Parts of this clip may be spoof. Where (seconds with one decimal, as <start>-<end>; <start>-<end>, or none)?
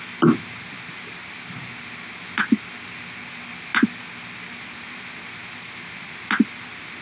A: none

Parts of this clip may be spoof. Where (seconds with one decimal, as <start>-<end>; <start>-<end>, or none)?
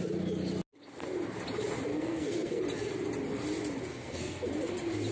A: 1.9-2.6; 3.9-4.5